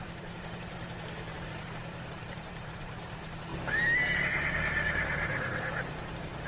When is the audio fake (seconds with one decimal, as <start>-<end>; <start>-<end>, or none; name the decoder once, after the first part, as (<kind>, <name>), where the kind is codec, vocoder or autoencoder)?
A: 0.0-3.5 (vocoder, BigVGAN v2); 4.5-6.5